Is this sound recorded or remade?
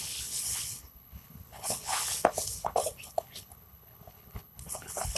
remade